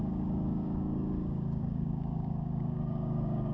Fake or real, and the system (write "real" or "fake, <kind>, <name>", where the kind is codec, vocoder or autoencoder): fake, codec, DAC